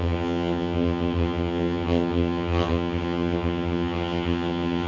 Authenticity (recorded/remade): remade